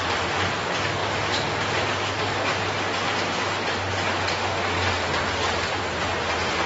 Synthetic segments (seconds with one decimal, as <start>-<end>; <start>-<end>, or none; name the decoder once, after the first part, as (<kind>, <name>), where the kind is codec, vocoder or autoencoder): none